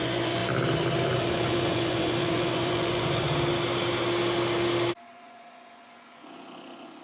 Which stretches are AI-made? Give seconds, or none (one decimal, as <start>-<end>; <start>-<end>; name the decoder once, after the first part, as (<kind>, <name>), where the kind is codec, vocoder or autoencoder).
0.0-0.4 (vocoder, Vocos); 1.3-3.3; 5.1-7.0